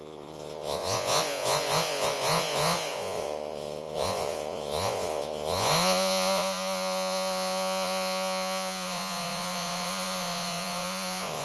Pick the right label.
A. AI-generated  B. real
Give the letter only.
A